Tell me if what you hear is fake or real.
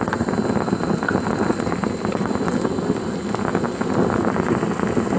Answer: real